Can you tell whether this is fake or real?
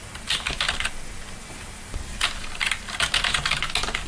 real